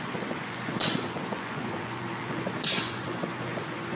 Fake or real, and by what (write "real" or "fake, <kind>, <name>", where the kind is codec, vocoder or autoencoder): fake, vocoder, Vocos